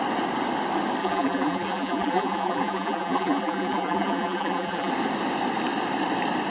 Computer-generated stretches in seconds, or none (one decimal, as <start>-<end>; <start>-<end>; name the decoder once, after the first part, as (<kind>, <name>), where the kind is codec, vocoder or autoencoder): 1.0-4.9 (vocoder, BigVGAN v2)